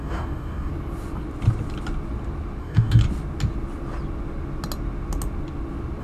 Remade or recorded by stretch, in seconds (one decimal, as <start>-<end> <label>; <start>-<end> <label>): 0.0-0.7 remade; 0.7-2.6 recorded; 2.6-3.0 remade; 3.0-6.0 recorded